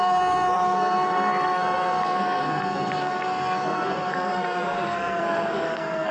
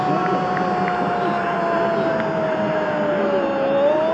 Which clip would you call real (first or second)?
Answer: second